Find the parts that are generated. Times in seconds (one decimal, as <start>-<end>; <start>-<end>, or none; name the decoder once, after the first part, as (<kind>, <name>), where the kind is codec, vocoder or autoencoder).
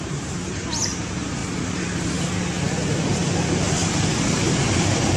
0.0-1.4 (vocoder, BigVGAN v2); 4.5-5.2